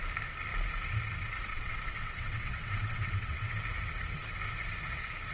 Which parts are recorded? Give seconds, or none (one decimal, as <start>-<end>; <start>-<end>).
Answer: 0.0-1.5; 3.5-5.3